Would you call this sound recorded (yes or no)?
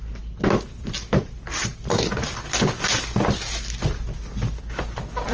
yes